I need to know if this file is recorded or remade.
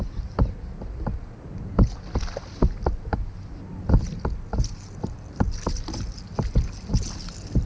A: recorded